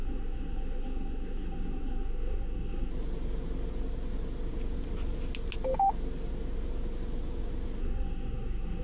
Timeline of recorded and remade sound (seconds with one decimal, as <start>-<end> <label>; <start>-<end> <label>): 0.0-2.9 remade; 2.9-7.8 recorded; 7.8-8.8 remade